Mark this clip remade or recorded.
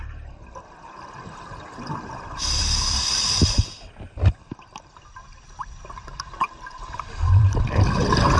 remade